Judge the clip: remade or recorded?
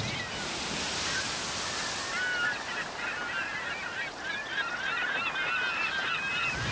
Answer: recorded